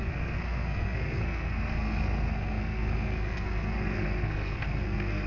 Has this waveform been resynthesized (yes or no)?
yes